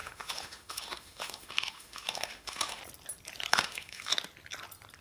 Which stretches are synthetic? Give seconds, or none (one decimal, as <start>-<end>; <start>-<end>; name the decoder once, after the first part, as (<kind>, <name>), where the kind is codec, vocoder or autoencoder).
0.0-2.8 (autoencoder, DAC-VAE); 3.5-4.1